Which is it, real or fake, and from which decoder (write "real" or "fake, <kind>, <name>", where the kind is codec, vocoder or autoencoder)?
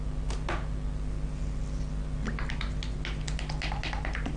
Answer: real